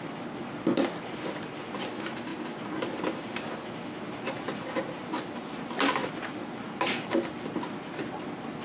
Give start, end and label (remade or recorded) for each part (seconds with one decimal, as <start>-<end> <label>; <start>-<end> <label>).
0.0-8.6 recorded